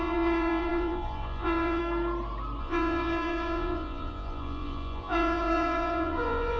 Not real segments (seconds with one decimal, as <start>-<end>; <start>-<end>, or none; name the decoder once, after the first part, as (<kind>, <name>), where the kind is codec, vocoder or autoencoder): 0.0-1.8 (vocoder, Vocos); 2.6-6.6